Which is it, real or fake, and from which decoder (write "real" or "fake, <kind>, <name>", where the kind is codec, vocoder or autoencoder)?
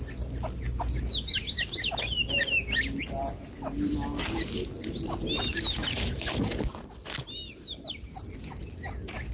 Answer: real